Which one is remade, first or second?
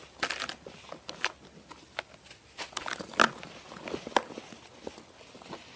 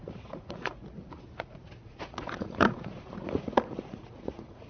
second